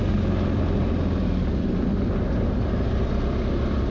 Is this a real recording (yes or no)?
yes